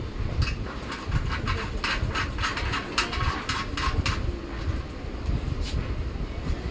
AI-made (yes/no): no